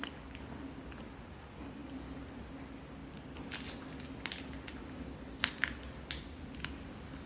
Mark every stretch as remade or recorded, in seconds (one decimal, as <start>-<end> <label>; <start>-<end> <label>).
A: 0.0-7.3 recorded